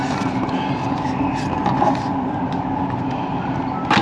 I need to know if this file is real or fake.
real